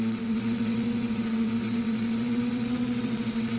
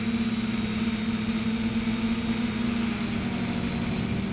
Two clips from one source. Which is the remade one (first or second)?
first